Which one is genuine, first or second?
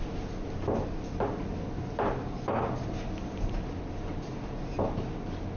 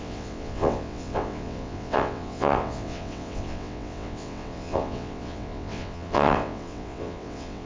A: first